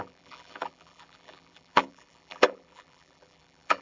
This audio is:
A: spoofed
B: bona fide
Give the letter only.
A